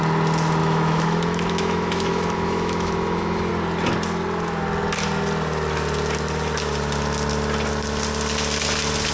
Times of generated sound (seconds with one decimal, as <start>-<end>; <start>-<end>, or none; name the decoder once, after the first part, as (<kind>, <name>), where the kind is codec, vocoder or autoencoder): 0.6-3.5 (autoencoder, DAC-VAE)